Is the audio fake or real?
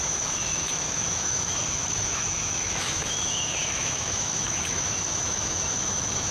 fake